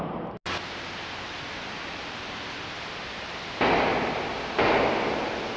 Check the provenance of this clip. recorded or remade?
recorded